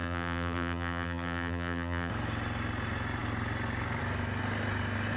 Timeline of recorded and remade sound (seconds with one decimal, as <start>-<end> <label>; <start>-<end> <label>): 0.0-2.1 remade; 2.1-5.2 recorded